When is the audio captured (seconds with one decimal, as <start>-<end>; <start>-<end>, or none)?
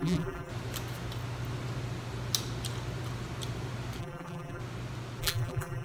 0.5-4.0; 4.6-5.2